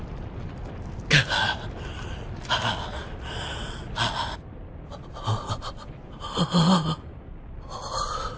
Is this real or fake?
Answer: real